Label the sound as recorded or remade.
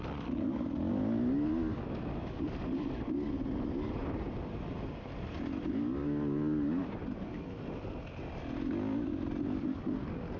recorded